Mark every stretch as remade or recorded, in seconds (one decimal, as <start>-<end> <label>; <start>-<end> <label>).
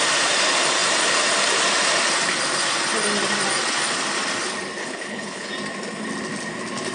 0.0-4.8 recorded; 4.8-5.5 remade; 5.5-6.9 recorded